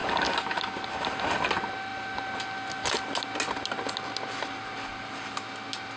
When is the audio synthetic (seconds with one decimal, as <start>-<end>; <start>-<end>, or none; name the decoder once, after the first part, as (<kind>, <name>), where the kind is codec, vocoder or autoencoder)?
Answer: none